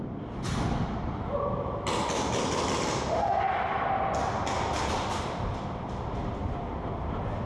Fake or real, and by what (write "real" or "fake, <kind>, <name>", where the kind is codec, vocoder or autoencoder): real